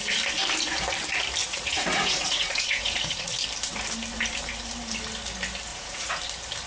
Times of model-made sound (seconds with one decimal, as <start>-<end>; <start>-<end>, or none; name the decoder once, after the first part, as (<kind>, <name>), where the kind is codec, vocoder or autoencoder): 1.4-3.3 (vocoder, Vocos); 5.7-6.2

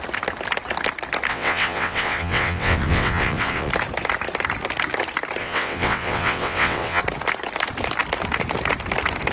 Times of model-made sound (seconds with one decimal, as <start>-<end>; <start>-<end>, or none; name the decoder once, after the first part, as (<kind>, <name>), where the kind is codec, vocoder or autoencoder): 1.3-3.7 (vocoder, WaveNeXt); 5.4-7.0